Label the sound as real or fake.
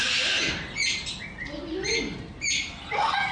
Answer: real